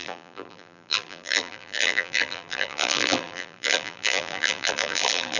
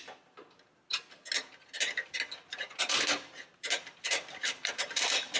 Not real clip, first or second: first